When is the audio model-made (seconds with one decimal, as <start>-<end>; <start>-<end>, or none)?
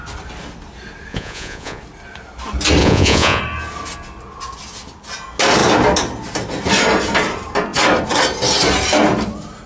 1.1-1.8; 2.8-3.4